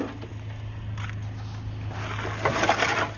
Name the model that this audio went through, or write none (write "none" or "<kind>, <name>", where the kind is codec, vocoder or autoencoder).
none